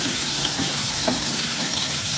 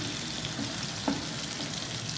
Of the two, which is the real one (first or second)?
second